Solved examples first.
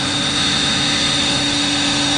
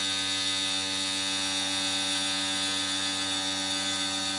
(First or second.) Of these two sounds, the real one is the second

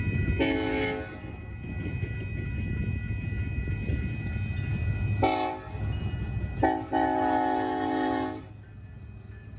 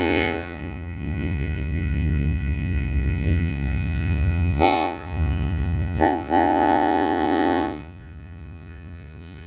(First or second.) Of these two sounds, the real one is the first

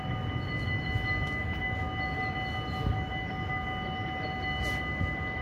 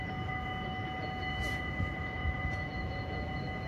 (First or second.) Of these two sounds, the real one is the first